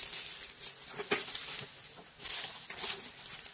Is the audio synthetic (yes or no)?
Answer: no